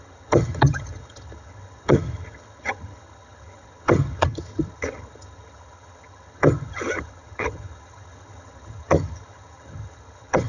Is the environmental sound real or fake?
fake